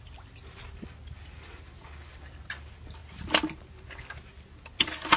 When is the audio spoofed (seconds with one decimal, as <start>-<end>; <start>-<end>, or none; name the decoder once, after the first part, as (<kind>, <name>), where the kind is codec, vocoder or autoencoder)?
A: none